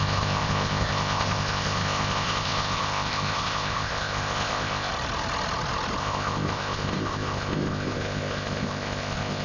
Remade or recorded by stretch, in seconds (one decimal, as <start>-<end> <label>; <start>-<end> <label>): 0.0-4.9 remade; 4.9-6.0 recorded; 6.0-9.4 remade